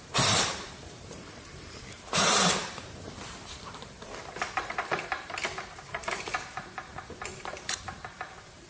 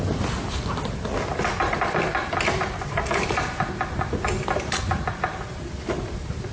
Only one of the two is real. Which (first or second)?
second